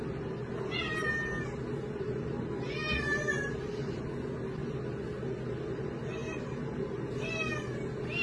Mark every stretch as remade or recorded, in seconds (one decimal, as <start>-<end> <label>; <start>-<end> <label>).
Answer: 0.0-2.8 recorded; 2.8-4.0 remade; 4.0-8.2 recorded